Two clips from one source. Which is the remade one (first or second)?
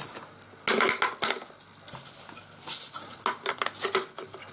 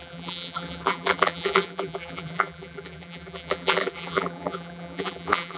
second